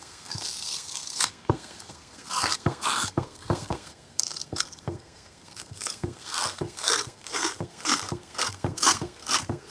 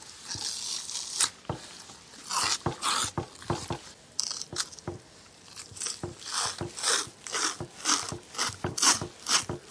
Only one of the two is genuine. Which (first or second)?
second